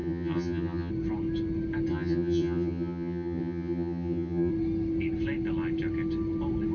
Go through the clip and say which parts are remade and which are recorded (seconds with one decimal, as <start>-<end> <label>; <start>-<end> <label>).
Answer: 0.0-0.9 remade; 0.9-1.9 recorded; 1.9-4.5 remade; 4.5-6.7 recorded